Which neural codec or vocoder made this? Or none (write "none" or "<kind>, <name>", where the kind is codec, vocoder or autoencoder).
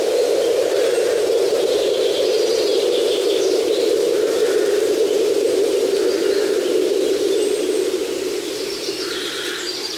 vocoder, BigVGAN v2